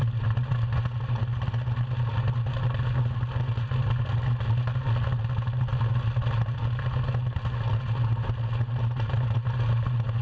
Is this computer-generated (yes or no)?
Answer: no